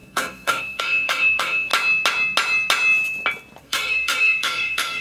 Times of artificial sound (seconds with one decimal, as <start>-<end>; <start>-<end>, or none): 0.0-1.7; 3.6-5.0